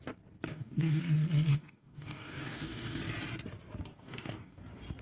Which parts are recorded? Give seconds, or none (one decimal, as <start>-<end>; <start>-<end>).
0.0-0.5; 1.0-1.5; 3.0-3.9; 4.6-5.0